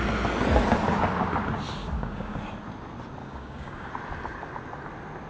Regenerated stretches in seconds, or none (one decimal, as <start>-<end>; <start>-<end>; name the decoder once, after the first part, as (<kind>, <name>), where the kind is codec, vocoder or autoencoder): 1.8-2.4 (codec, DAC); 3.2-3.9